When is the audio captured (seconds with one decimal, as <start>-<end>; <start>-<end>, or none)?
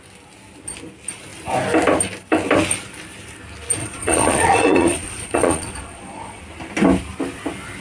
0.0-3.8; 6.4-7.8